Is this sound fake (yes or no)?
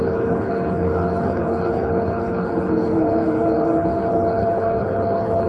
yes